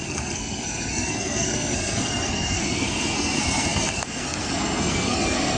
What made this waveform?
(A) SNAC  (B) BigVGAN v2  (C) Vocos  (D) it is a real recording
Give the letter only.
A